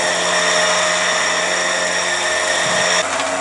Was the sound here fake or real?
real